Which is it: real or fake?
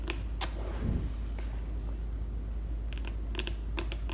real